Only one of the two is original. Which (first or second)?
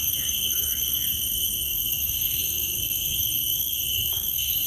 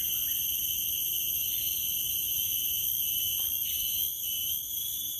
second